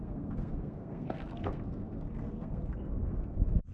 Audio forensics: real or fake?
fake